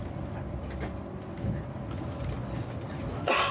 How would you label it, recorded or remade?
recorded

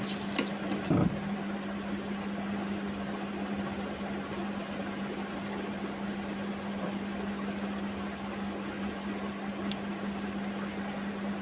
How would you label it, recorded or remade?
recorded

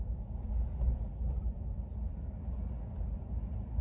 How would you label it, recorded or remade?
recorded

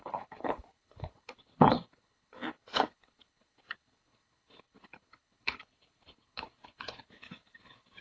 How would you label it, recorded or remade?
remade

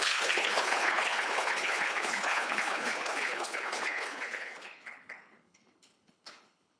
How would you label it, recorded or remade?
remade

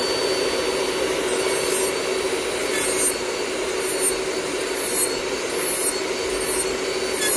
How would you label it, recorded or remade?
recorded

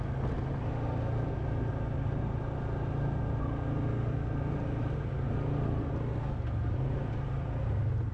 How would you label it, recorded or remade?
recorded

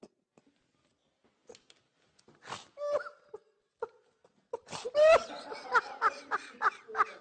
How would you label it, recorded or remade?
recorded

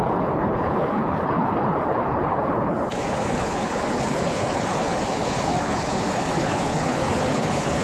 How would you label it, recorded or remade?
remade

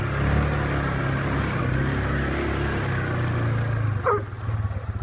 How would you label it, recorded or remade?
recorded